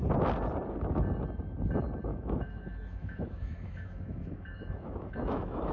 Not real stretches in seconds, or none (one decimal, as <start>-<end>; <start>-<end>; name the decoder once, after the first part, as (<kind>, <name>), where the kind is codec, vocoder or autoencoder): 2.1-5.7 (autoencoder, DAC-VAE)